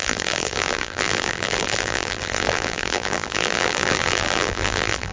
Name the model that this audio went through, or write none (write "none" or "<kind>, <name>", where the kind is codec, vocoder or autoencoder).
vocoder, BigVGAN v2